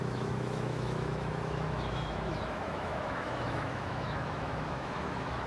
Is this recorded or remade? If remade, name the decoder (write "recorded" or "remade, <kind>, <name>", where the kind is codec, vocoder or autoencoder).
remade, autoencoder, DAC-VAE